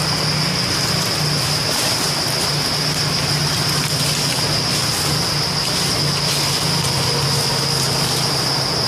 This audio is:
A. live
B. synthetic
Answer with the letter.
A